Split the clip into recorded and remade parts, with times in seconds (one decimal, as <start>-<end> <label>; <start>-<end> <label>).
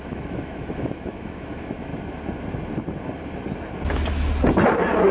0.0-1.9 remade; 1.9-5.1 recorded